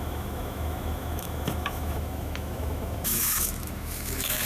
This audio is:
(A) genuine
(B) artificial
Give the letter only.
B